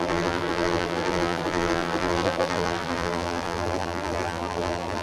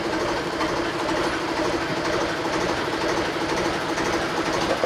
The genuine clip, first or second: second